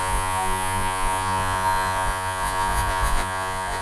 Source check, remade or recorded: remade